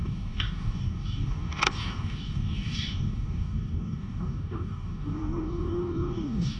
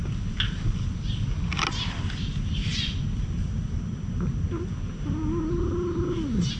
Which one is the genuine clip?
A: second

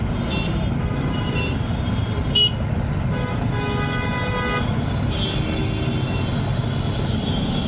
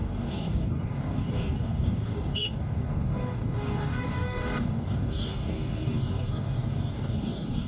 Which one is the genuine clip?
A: first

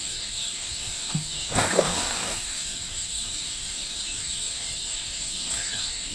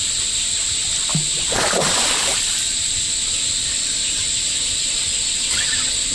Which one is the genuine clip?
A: second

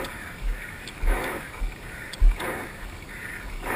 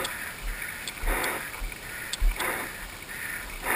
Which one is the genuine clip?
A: second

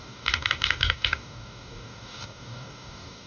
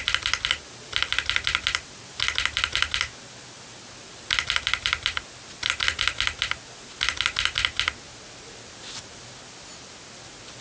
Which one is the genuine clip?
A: second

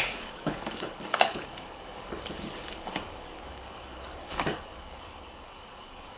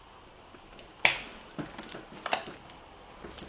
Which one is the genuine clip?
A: second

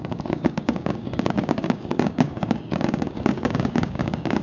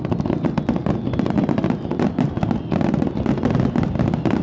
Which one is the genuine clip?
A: second